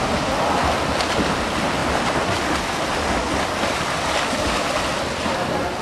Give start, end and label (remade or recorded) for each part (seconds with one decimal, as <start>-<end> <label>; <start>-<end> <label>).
0.0-5.8 recorded